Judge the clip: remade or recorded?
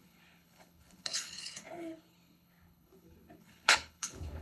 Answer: remade